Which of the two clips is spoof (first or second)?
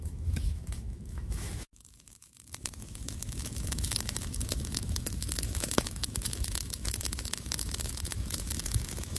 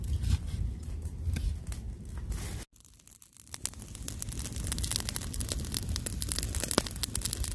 first